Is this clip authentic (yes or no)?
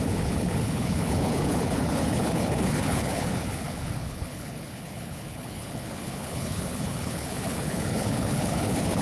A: no